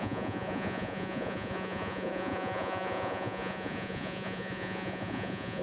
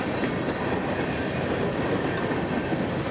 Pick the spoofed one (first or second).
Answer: first